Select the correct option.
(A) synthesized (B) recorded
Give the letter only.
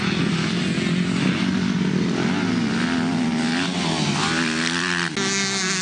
B